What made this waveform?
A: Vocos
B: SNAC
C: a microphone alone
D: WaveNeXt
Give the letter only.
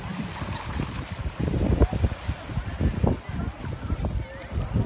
C